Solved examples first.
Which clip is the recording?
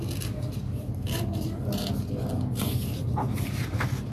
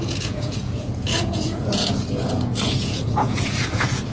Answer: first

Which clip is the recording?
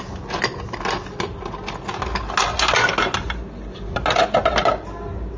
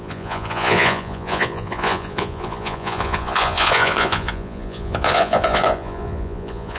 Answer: first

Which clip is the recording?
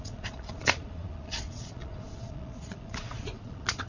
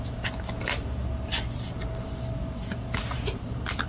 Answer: second